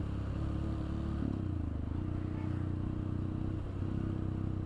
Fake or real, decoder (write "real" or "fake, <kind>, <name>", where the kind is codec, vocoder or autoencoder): real